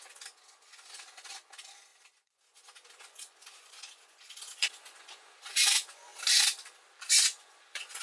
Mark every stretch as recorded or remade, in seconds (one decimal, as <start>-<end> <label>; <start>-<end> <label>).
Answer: 0.0-6.1 remade; 6.1-7.1 recorded; 7.1-8.0 remade